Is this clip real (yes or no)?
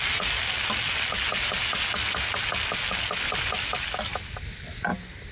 yes